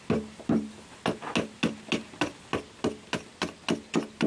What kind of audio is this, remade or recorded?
recorded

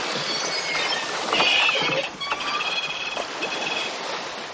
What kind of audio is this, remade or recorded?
recorded